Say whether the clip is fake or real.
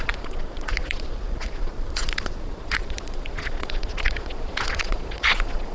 fake